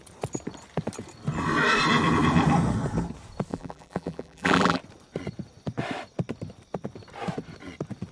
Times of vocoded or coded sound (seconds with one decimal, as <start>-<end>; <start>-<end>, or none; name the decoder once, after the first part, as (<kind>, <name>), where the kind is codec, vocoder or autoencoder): 3.5-4.8 (vocoder, BigVGAN v2)